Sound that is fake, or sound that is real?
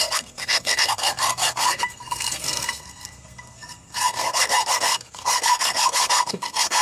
fake